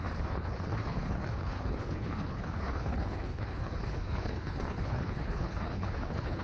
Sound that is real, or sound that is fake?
fake